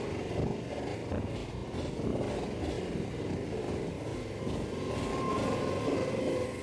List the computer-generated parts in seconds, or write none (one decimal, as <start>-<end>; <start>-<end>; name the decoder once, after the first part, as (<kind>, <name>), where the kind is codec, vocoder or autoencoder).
none